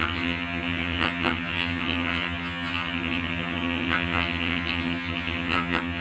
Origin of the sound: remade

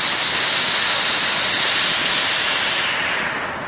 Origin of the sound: recorded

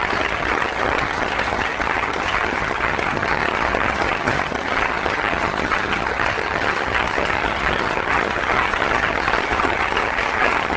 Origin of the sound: remade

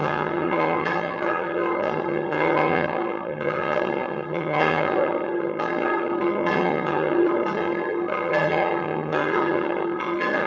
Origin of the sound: remade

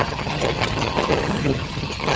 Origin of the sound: remade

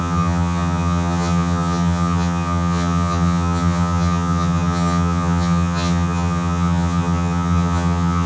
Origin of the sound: remade